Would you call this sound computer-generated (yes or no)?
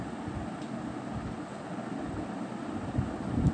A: no